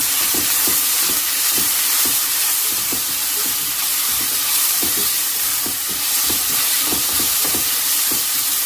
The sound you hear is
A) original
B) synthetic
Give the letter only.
B